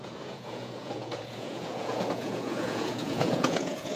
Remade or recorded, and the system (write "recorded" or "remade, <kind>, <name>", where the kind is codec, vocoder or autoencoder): remade, vocoder, Vocos